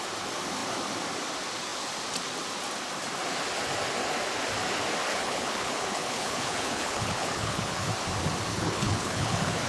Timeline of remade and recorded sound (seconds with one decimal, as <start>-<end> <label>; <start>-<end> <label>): 0.0-5.1 recorded; 5.1-7.9 remade; 7.9-8.5 recorded; 8.5-9.7 remade